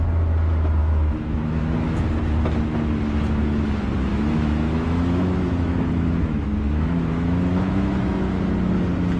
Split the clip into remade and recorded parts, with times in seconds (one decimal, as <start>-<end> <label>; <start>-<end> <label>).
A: 0.0-0.8 recorded; 0.8-2.0 remade; 2.0-4.1 recorded; 4.1-8.4 remade; 8.4-9.2 recorded